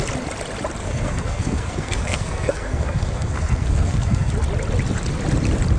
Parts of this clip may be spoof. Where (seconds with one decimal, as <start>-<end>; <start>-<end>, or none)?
0.8-4.3